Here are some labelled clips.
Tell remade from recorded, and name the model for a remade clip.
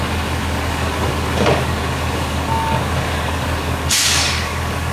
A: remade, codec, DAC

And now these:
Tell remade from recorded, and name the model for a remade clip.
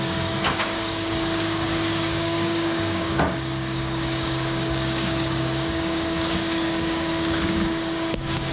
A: remade, codec, DAC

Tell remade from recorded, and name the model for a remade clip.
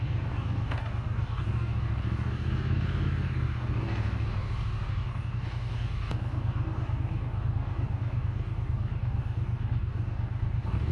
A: remade, codec, DAC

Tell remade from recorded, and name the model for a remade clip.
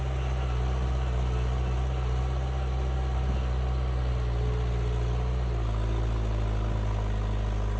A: recorded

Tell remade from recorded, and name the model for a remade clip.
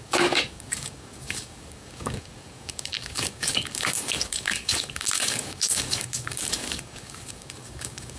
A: remade, codec, DAC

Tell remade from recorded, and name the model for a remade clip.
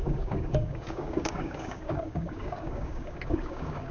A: remade, codec, DAC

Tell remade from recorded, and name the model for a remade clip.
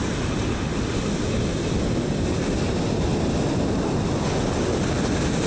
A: recorded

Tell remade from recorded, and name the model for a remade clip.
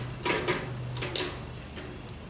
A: recorded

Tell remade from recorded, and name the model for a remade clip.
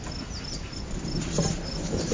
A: recorded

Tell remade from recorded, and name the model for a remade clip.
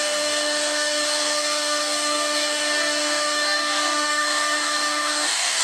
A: remade, codec, DAC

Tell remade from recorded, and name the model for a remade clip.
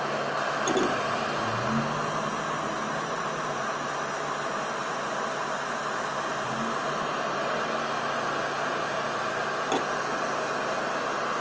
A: recorded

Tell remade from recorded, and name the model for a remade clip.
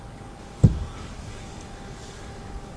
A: remade, codec, DAC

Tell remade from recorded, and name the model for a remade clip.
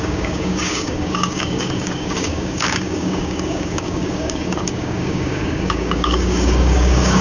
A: remade, codec, DAC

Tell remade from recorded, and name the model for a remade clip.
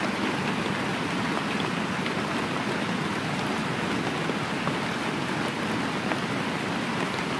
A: recorded